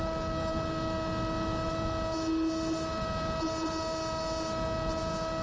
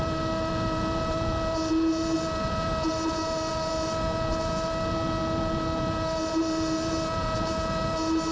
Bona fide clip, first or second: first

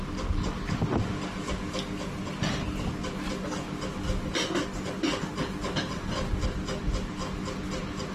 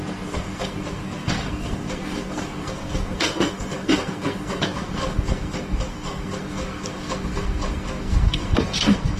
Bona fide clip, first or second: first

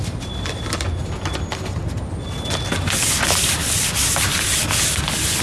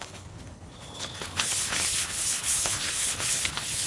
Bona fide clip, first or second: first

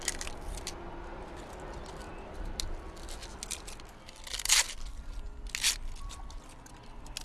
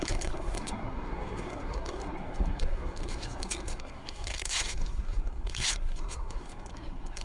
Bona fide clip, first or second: first